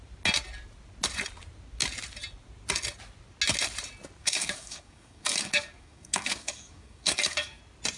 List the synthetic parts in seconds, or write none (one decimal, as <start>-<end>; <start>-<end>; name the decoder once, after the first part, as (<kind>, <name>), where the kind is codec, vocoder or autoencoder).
4.2-7.6 (codec, DAC)

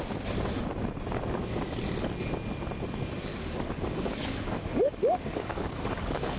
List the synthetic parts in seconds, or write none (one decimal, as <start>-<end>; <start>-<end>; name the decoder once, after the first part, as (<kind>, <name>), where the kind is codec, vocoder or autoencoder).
3.3-6.4 (codec, DAC)